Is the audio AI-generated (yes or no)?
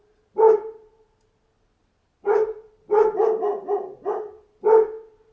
no